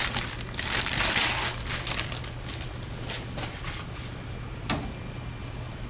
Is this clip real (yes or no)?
yes